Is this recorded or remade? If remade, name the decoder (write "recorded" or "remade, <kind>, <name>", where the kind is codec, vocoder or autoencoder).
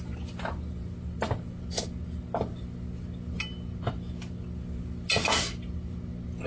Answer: recorded